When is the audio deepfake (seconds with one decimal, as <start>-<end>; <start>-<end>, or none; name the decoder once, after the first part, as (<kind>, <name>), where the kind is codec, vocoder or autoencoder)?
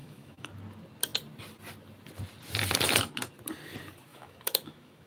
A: 0.0-0.5 (autoencoder, DAC-VAE); 4.1-5.1